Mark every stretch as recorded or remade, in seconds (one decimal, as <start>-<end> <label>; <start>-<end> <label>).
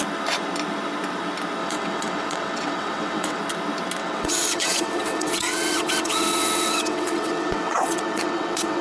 0.0-1.6 recorded; 1.6-3.4 remade; 3.4-4.0 recorded; 4.0-8.8 remade